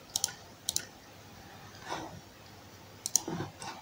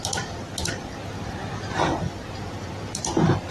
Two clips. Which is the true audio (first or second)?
first